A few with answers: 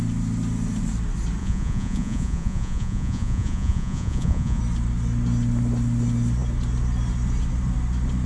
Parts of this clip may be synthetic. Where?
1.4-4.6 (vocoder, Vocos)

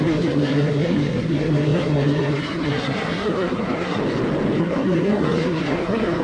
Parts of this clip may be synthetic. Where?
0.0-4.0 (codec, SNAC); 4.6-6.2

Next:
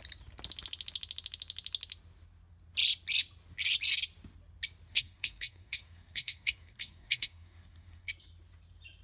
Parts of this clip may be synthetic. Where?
4.9-8.1 (codec, SNAC)

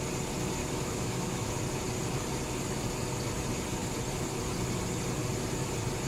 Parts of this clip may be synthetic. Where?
0.6-1.5 (autoencoder, DAC-VAE)

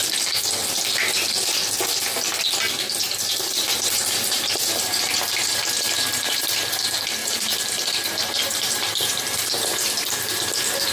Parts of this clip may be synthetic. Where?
3.0-10.9 (vocoder, BigVGAN v2)

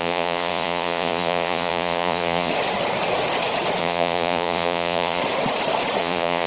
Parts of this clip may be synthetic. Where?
0.0-2.5 (vocoder, Vocos); 3.8-5.2; 6.0-6.5